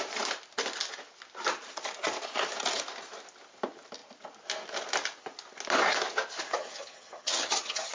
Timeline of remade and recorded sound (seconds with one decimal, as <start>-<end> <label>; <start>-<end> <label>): 0.0-6.6 recorded; 6.6-7.9 remade